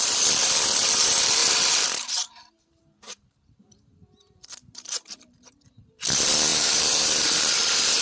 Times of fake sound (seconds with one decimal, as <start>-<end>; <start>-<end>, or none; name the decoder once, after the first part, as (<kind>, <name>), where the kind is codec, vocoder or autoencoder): 0.0-8.0 (vocoder, BigVGAN v2)

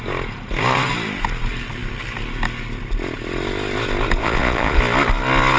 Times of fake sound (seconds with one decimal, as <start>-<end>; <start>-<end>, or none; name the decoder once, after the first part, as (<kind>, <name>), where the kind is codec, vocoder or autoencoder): 4.2-4.8 (vocoder, Vocos)

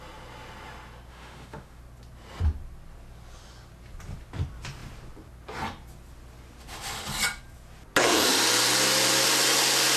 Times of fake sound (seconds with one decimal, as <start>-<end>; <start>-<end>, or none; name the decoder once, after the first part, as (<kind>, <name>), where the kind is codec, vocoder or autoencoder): 1.1-1.8 (autoencoder, DAC-VAE)

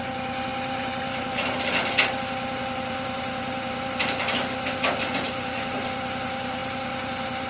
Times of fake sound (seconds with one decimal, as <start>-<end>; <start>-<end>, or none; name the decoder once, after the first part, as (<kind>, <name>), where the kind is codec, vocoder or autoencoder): 0.0-7.5 (vocoder, BigVGAN v2)

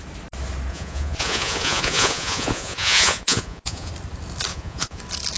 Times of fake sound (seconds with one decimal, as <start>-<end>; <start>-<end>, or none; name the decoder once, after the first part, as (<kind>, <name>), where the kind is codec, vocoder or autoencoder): 0.7-3.9 (vocoder, Vocos); 4.5-5.0